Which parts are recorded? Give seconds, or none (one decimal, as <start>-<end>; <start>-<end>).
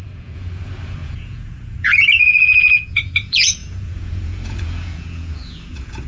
none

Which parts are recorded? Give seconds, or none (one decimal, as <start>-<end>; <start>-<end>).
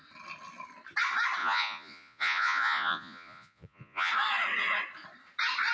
0.0-1.4; 4.1-5.7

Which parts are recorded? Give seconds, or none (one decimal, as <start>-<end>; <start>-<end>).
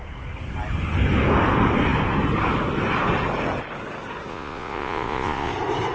0.0-4.3; 5.5-5.9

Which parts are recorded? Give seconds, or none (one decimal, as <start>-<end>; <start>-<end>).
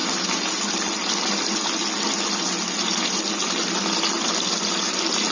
0.0-5.3